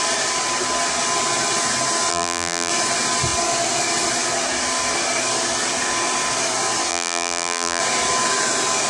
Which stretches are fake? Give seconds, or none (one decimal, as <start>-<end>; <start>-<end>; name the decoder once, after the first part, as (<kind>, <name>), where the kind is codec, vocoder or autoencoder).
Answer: 2.1-2.7 (vocoder, BigVGAN v2); 6.9-7.8